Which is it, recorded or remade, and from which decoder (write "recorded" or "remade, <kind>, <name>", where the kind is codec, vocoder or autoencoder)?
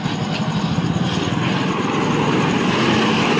recorded